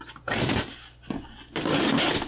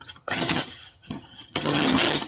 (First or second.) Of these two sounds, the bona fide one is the first